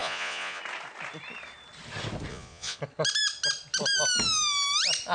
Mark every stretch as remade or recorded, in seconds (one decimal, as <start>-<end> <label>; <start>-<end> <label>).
0.0-0.6 remade; 0.6-2.3 recorded; 2.3-2.8 remade; 2.8-5.1 recorded

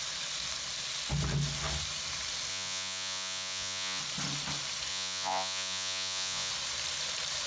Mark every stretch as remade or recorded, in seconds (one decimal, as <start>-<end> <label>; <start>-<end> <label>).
0.0-2.5 recorded; 2.5-4.0 remade; 4.0-4.9 recorded; 4.9-6.5 remade; 6.5-7.5 recorded

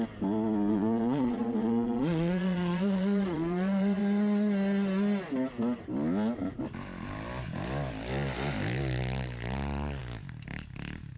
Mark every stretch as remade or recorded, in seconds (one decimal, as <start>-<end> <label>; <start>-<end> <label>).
0.0-0.7 recorded; 0.7-4.0 remade; 4.0-11.2 recorded

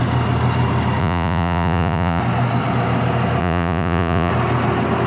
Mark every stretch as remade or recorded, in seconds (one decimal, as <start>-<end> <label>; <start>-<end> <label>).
0.0-1.0 recorded; 1.0-2.2 remade; 2.2-3.4 recorded; 3.4-4.3 remade; 4.3-5.1 recorded

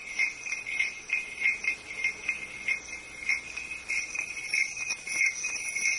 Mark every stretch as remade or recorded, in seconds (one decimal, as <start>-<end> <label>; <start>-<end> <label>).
0.0-6.0 recorded

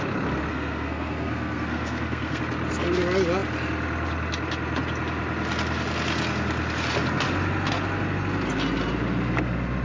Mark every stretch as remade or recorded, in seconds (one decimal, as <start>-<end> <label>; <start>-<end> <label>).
0.0-0.5 recorded; 0.5-2.4 remade; 2.4-9.8 recorded

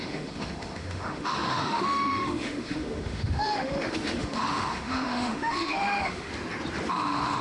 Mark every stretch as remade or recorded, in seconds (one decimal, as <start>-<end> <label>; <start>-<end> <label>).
0.0-6.3 remade; 6.3-6.9 recorded; 6.9-7.4 remade